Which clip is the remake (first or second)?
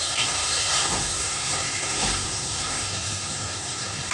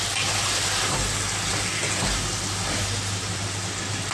first